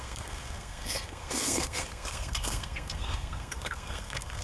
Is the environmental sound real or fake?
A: fake